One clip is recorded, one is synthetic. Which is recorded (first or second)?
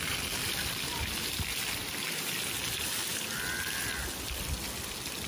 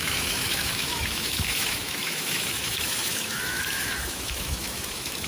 first